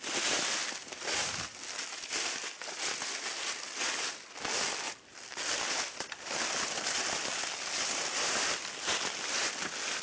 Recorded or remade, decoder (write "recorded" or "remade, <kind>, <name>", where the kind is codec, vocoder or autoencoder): recorded